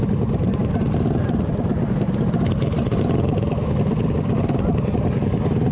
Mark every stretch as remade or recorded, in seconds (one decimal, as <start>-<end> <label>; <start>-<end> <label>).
0.0-5.7 recorded